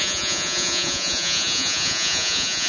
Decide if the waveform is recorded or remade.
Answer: remade